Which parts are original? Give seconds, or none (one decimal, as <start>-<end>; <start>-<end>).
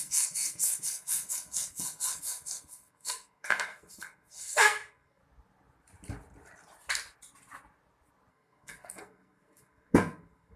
5.2-8.3